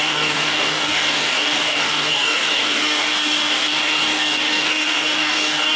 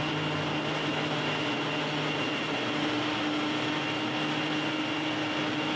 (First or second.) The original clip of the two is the second